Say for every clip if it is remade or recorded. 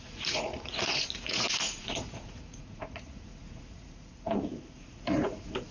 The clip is remade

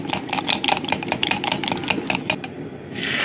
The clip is recorded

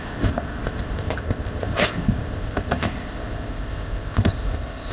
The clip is remade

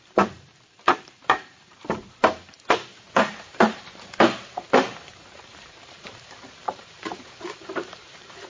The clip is remade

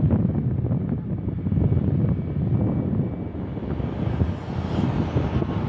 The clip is recorded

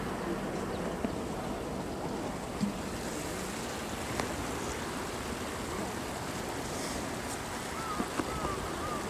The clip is recorded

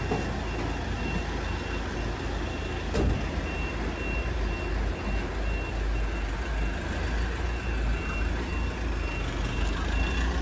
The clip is recorded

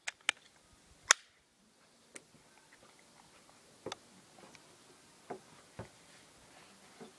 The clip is recorded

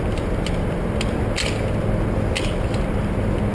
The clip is recorded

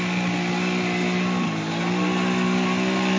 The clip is recorded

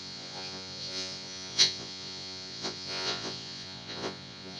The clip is remade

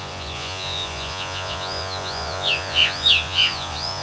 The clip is remade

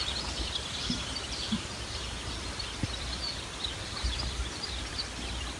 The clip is remade